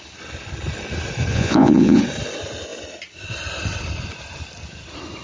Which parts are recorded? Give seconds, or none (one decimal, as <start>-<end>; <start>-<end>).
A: 0.0-1.3; 2.0-5.2